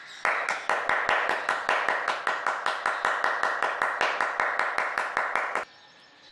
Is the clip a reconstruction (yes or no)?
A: no